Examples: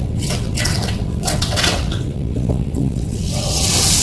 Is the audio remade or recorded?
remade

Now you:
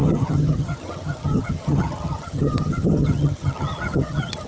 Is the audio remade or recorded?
remade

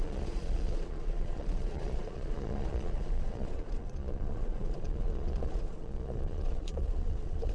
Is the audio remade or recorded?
remade